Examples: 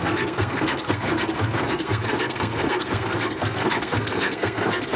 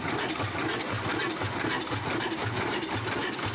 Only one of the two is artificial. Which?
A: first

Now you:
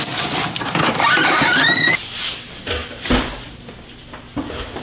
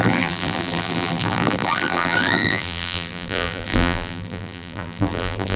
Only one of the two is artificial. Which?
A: second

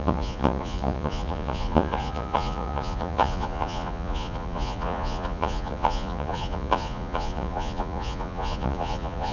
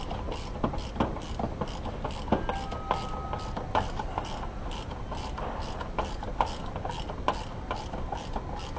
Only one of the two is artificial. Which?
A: first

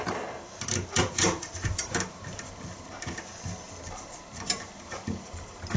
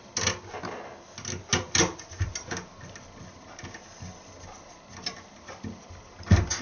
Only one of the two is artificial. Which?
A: first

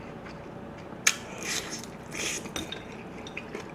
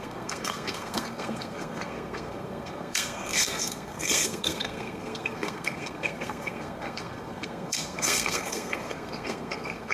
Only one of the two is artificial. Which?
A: second